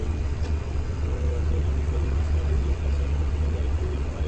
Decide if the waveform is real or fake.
fake